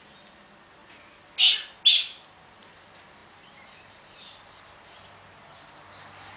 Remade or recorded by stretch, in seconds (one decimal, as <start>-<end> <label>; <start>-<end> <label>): 0.0-6.4 recorded